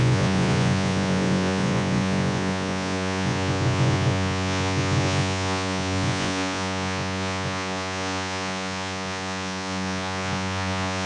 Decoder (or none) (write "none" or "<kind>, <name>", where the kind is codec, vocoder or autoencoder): vocoder, Vocos